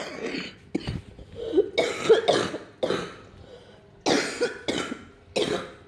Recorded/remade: recorded